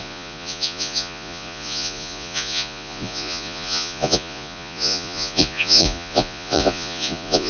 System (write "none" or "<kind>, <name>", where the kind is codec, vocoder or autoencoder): vocoder, Vocos